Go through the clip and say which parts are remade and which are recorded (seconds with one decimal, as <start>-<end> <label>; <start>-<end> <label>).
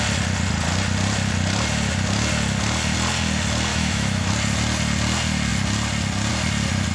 0.0-3.7 recorded; 3.7-4.3 remade; 4.3-6.9 recorded